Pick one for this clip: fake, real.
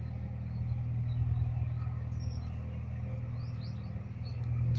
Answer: real